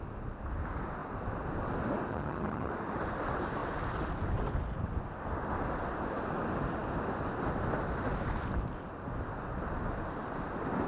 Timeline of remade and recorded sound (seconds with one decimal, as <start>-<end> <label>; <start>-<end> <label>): 0.0-2.1 recorded; 2.1-2.7 remade; 2.7-10.9 recorded